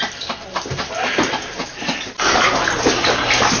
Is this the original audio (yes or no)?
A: yes